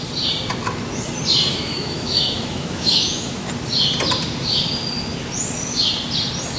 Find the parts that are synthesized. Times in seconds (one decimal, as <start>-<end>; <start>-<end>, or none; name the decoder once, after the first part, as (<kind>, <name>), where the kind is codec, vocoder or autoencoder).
1.5-3.5 (autoencoder, DAC-VAE)